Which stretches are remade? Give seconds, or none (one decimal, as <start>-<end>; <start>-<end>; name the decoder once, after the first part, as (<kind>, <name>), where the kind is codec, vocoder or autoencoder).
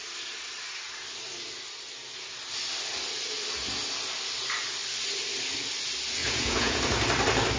6.2-6.8 (vocoder, Vocos)